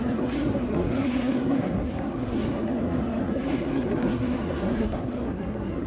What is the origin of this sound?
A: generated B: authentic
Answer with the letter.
A